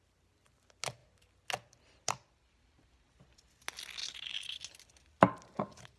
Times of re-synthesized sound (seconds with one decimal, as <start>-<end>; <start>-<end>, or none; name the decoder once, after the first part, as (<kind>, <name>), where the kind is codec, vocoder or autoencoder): none